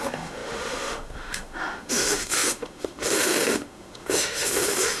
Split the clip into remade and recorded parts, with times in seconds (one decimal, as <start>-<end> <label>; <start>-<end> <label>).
0.0-5.0 remade